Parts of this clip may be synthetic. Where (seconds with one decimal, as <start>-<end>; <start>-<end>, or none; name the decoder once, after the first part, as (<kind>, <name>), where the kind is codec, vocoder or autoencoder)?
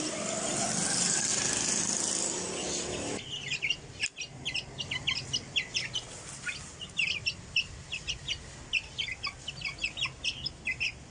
none